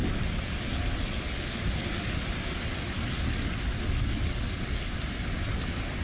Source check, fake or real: real